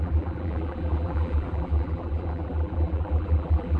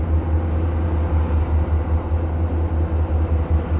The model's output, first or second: first